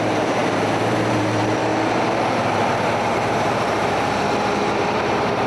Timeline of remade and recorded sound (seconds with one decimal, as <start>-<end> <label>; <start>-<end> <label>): 0.0-1.7 remade; 1.7-2.3 recorded; 2.3-5.5 remade